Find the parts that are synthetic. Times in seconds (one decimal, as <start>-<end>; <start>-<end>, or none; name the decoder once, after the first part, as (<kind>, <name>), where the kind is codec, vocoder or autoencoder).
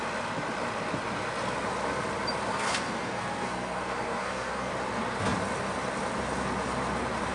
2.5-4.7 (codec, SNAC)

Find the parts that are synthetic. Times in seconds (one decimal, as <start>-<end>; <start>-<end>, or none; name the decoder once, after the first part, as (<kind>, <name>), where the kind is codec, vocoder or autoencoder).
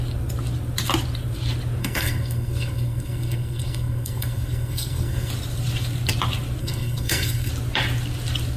1.8-5.3 (codec, SNAC); 6.6-7.5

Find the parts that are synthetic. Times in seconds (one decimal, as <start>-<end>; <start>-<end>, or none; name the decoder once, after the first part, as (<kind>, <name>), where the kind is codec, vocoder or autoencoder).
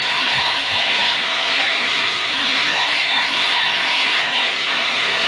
0.0-5.3 (codec, SNAC)